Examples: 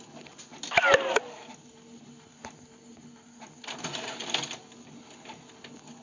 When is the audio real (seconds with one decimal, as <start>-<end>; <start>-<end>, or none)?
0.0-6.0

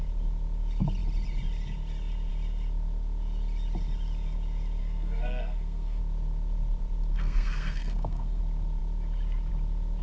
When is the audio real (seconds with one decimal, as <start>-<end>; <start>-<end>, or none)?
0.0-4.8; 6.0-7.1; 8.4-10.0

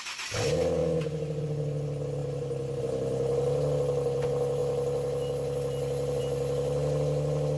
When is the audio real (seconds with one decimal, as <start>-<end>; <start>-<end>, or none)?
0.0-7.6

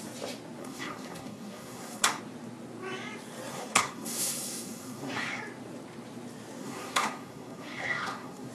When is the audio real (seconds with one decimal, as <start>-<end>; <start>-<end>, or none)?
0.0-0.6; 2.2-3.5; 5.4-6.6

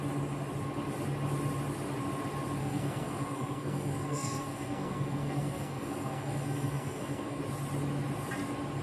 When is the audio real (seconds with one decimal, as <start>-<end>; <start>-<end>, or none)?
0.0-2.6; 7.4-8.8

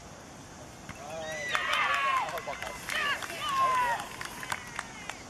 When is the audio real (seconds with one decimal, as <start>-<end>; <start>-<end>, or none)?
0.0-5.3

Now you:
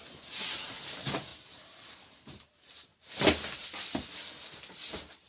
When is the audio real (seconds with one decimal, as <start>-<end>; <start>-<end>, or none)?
0.0-5.3